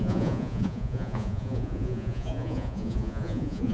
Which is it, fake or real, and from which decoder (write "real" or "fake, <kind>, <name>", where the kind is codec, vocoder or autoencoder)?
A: fake, vocoder, Vocos